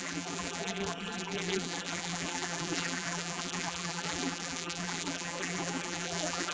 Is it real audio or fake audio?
fake